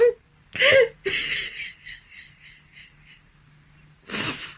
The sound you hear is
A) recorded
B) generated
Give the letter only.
A